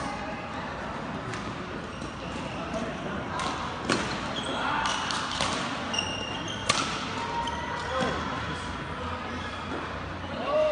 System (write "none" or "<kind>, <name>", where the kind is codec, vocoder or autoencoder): none